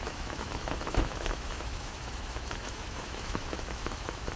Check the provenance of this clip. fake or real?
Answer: fake